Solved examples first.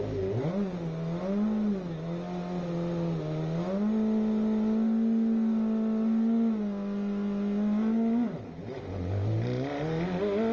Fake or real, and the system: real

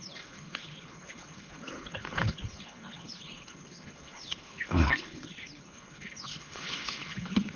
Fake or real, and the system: fake, codec, HILCodec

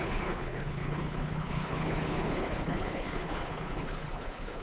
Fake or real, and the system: fake, codec, HILCodec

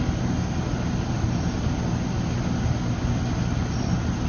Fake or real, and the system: real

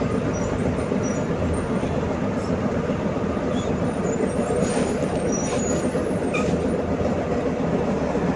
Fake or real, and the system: real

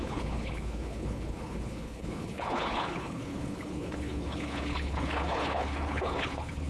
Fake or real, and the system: fake, codec, HILCodec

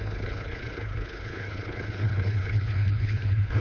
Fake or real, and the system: fake, codec, HILCodec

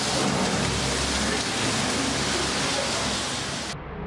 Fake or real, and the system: real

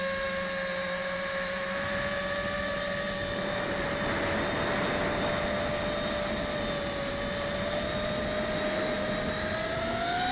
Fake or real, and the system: real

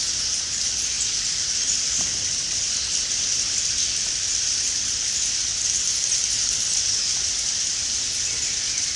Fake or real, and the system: real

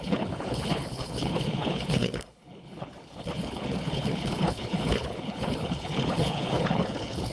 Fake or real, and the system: fake, codec, HILCodec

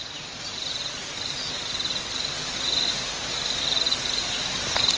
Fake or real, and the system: real